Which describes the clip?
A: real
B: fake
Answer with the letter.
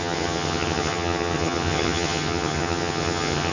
B